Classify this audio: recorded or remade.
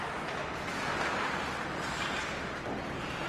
recorded